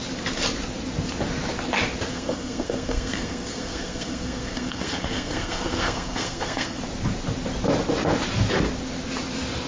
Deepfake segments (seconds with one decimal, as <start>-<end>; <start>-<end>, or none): 2.1-6.8